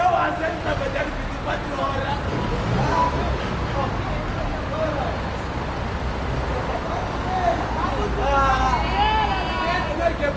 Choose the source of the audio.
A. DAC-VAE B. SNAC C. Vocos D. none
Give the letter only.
D